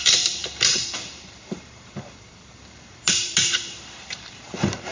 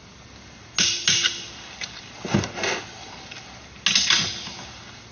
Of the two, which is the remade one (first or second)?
first